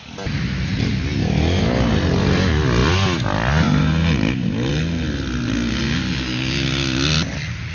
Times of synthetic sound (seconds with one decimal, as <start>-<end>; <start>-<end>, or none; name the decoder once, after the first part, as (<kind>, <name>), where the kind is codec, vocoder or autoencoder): none